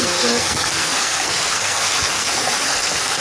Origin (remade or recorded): remade